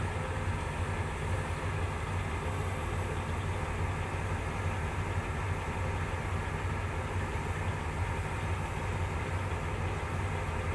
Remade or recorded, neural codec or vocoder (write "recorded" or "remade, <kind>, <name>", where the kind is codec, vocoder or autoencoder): recorded